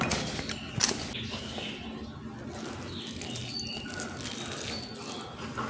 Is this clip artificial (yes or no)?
no